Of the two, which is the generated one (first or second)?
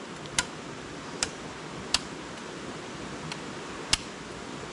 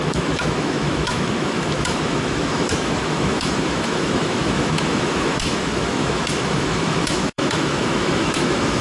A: second